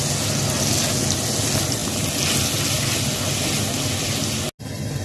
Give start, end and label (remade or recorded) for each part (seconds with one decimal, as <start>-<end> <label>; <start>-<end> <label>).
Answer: 0.0-5.0 recorded